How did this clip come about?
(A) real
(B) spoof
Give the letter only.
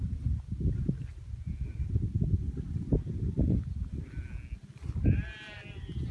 A